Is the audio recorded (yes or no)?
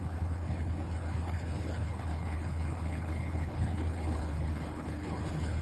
no